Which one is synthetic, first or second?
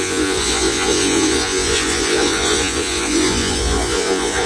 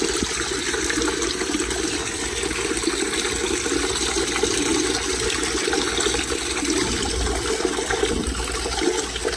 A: first